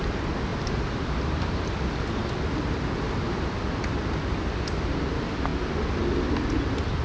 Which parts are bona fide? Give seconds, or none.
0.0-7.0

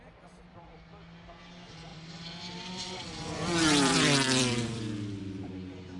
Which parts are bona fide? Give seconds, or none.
0.0-1.9; 5.5-6.0

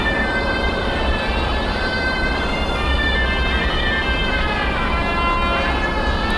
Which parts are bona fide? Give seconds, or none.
3.8-6.4

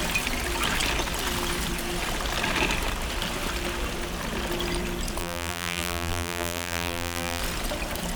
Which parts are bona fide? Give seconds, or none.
0.0-5.2; 7.4-8.2

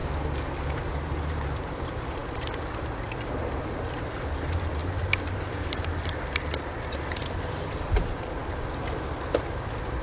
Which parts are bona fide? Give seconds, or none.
0.0-0.9

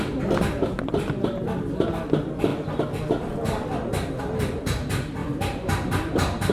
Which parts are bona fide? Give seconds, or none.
0.0-5.2

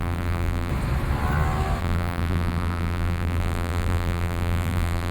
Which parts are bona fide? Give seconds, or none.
0.7-1.8

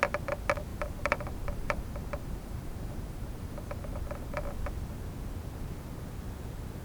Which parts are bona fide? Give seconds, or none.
0.0-0.7; 4.4-6.8